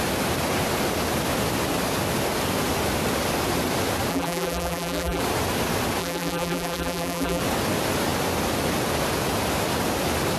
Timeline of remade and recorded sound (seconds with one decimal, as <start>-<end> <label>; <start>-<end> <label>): 0.0-4.1 recorded; 4.1-5.2 remade; 5.2-6.0 recorded; 6.0-7.4 remade; 7.4-10.4 recorded